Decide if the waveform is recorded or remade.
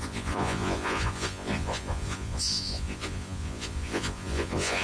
remade